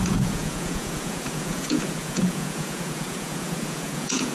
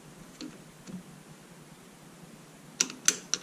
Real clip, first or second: second